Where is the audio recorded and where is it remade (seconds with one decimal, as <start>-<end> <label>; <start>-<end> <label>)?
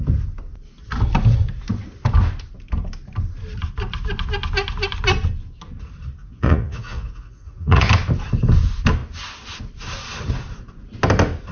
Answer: 0.0-6.2 recorded; 6.2-7.9 remade; 7.9-11.5 recorded